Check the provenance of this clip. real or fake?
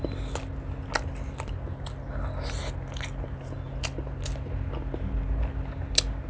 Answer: real